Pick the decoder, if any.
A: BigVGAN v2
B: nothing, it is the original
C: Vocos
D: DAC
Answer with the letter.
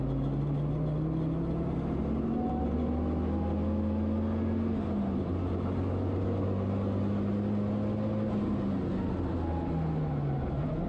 B